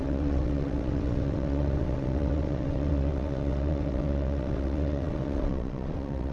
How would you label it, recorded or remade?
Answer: remade